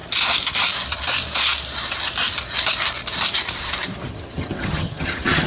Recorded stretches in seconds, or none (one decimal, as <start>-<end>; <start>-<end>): 0.0-4.1